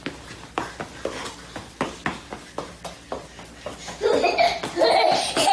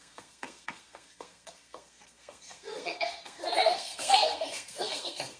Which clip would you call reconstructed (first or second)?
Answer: second